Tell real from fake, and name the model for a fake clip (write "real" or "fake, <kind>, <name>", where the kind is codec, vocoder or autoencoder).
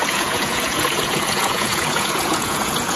fake, vocoder, Vocos